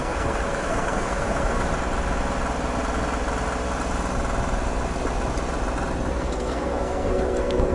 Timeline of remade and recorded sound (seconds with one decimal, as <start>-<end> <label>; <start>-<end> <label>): 0.0-1.7 remade; 1.7-6.1 recorded; 6.1-7.7 remade